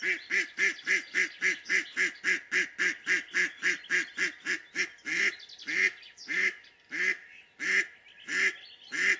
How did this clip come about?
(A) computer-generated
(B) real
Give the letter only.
B